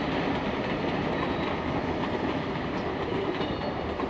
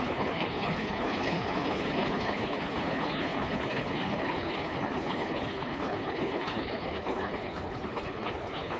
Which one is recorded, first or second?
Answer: first